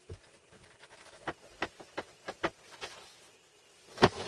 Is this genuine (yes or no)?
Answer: yes